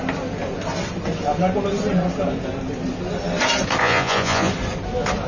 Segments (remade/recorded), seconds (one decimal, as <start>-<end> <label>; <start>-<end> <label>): 0.0-3.8 recorded; 3.8-4.5 remade; 4.5-5.3 recorded